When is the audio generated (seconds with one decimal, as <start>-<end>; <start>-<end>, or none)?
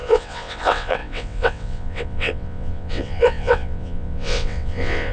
0.0-5.1